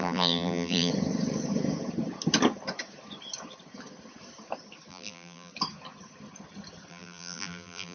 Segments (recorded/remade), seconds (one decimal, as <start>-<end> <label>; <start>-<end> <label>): 0.0-0.9 remade; 0.9-4.9 recorded; 4.9-5.5 remade; 5.5-6.9 recorded; 6.9-7.9 remade